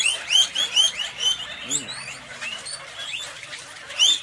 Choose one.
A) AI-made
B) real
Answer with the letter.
B